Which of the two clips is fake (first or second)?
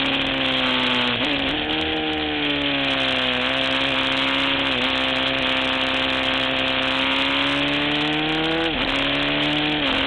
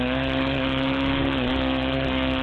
second